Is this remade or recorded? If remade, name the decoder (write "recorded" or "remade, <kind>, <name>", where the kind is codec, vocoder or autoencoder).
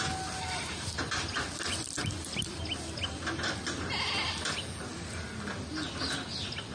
recorded